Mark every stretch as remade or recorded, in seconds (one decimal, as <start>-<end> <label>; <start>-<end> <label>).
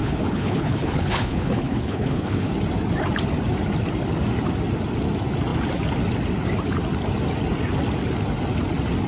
0.0-2.5 remade; 2.5-9.1 recorded